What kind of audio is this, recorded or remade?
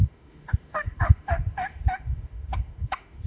remade